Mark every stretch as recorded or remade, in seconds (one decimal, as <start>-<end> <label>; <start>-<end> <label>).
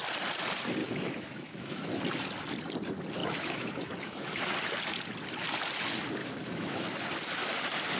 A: 0.0-0.8 recorded; 0.8-2.0 remade; 2.0-3.2 recorded; 3.2-4.4 remade; 4.4-6.2 recorded; 6.2-6.9 remade; 6.9-8.0 recorded